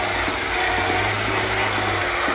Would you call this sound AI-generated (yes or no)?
no